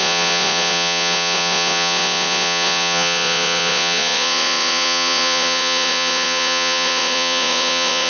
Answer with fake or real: fake